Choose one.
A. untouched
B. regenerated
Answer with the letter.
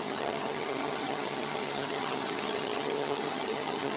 B